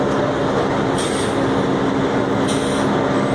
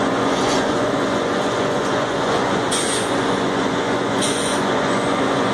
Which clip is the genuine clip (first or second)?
first